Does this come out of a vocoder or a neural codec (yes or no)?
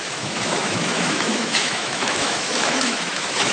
yes